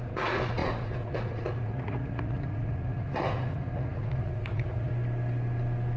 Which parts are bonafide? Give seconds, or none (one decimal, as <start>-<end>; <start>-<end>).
4.9-6.0